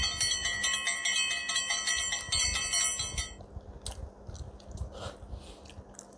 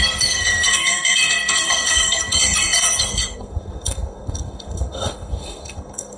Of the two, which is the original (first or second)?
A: first